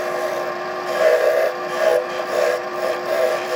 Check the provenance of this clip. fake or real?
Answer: fake